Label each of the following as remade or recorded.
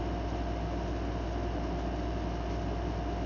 recorded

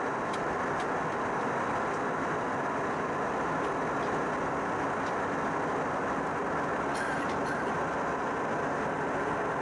recorded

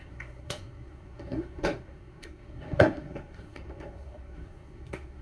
remade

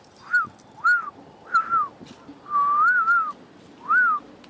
recorded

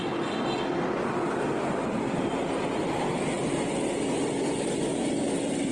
recorded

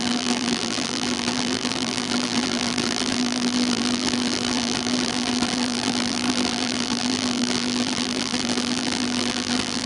remade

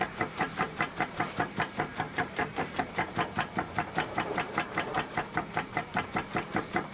remade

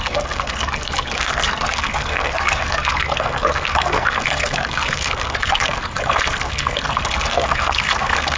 remade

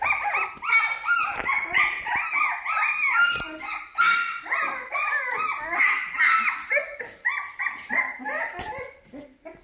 recorded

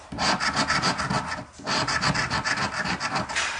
recorded